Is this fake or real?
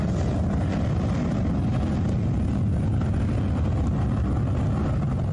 real